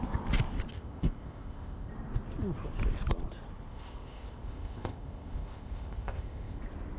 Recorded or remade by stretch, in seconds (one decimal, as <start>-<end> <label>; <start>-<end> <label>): 0.0-0.7 recorded; 0.7-1.9 remade; 1.9-3.7 recorded; 3.7-6.6 remade; 6.6-7.0 recorded

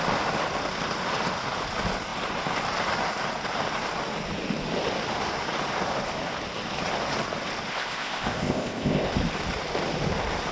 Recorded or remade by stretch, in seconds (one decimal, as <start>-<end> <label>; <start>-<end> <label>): 0.0-7.7 recorded; 7.7-9.1 remade; 9.1-10.5 recorded

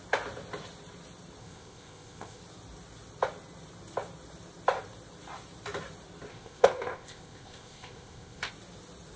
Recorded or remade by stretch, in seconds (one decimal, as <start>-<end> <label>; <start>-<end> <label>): 0.0-1.4 recorded; 1.4-2.4 remade; 2.4-6.3 recorded; 6.3-8.5 remade; 8.5-9.2 recorded

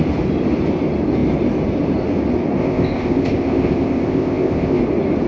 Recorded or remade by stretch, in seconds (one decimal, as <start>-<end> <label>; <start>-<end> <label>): 0.0-2.6 recorded; 2.6-4.8 remade; 4.8-5.3 recorded

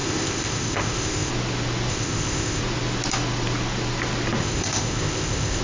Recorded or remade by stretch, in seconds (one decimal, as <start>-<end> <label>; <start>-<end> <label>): 0.0-1.3 remade; 1.3-1.9 recorded; 1.9-2.6 remade; 2.6-4.4 recorded; 4.4-5.6 remade

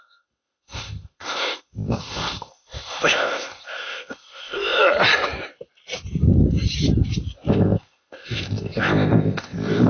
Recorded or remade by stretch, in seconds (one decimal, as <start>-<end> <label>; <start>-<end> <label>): 0.0-4.8 remade; 4.8-7.5 recorded; 7.5-9.9 remade

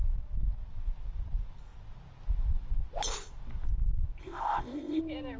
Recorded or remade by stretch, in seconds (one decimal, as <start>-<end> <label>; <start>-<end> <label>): 0.0-4.2 recorded; 4.2-5.0 remade; 5.0-5.4 recorded